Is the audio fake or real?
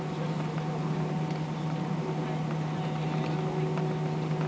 real